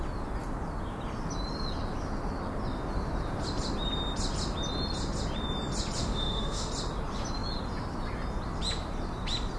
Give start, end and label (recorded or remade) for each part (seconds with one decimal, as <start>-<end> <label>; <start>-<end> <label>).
0.0-6.0 recorded; 6.0-6.7 remade; 6.7-9.6 recorded